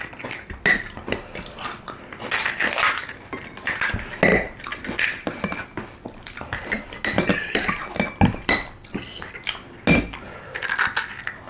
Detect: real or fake real